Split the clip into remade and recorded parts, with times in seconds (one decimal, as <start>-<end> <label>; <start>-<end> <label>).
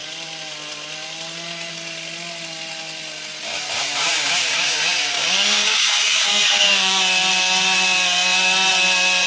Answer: 0.0-4.0 recorded; 4.0-7.0 remade; 7.0-9.3 recorded